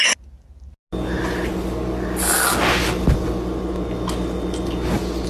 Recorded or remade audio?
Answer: recorded